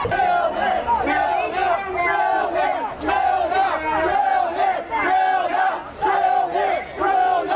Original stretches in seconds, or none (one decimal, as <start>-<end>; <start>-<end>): 0.0-7.6